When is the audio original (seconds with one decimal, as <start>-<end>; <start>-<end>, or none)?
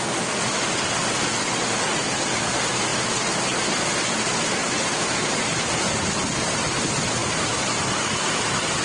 0.0-4.6; 5.8-8.8